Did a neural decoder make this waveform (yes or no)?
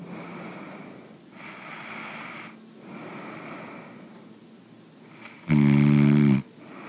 no